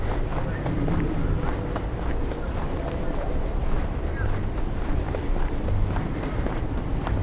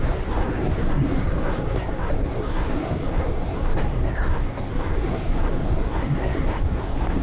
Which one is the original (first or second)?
first